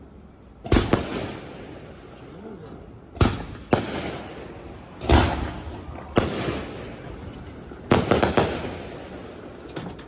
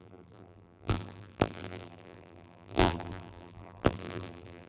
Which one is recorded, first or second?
first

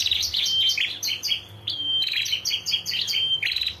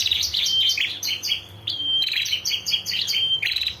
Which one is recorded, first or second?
first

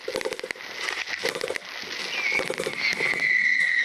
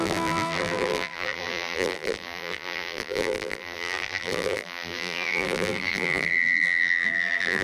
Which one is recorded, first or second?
first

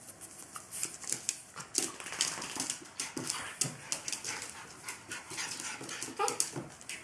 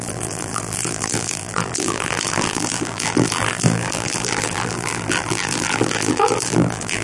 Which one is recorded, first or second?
first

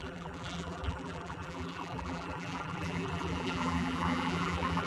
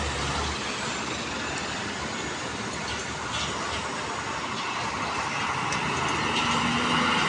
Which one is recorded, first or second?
second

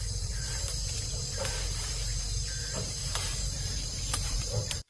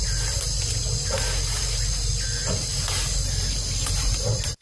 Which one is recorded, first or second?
second